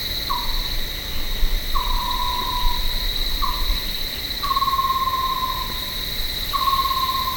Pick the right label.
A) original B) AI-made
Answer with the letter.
A